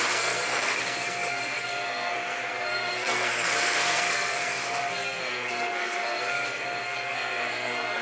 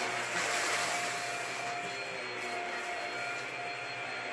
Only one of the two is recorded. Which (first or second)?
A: second